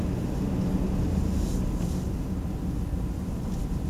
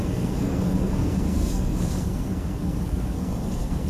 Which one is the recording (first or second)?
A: first